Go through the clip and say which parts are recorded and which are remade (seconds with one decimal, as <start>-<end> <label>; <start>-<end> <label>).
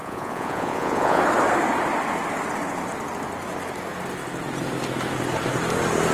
0.0-1.2 remade; 1.2-6.1 recorded